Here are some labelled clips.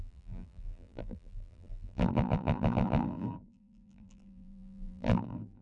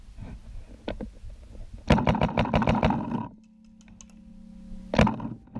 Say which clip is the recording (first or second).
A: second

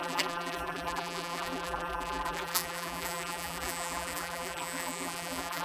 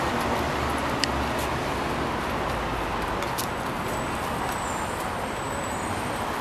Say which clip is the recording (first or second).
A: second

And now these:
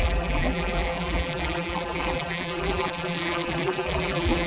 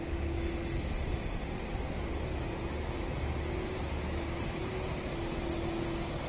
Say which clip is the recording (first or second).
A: second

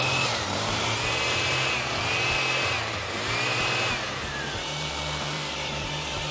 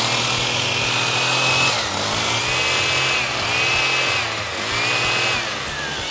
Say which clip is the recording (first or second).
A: second